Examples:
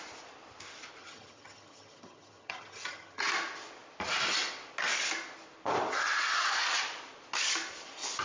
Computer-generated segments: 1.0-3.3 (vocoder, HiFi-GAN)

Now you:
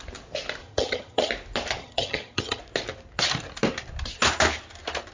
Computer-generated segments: 0.6-1.3 (vocoder, HiFi-GAN); 1.8-2.6